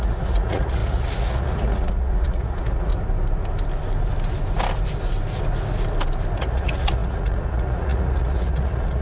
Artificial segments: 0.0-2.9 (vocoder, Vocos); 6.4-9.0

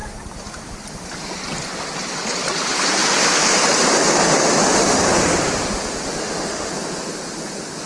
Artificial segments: 6.2-6.7 (autoencoder, DAC-VAE)

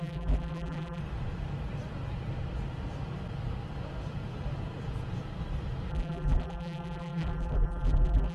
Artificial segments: 0.0-1.0 (vocoder, BigVGAN v2); 5.9-8.3